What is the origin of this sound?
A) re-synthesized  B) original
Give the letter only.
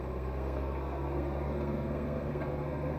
A